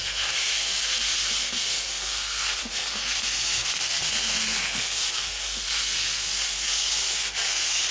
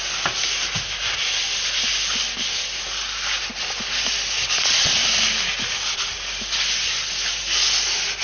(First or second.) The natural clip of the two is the second